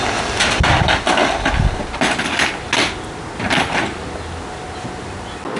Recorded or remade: recorded